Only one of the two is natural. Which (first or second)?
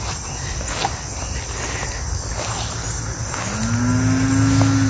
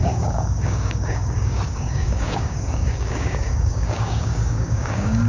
first